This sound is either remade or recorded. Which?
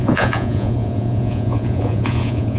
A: remade